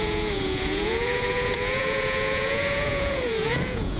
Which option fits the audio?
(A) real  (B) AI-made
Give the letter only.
B